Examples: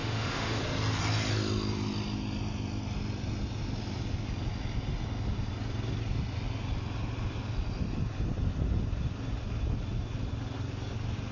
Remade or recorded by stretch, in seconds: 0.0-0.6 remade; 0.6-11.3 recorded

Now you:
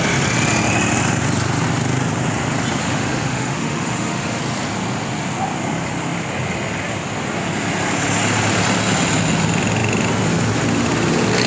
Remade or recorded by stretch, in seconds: 0.0-2.8 recorded; 2.8-4.4 remade; 4.4-11.5 recorded

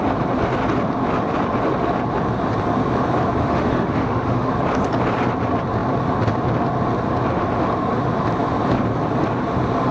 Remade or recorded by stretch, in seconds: 0.0-3.4 recorded; 3.4-4.5 remade; 4.5-9.9 recorded